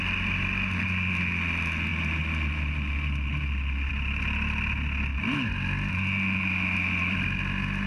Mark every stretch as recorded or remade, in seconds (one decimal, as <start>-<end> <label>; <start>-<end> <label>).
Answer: 0.0-7.9 recorded